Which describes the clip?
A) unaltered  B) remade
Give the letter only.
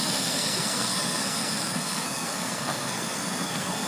B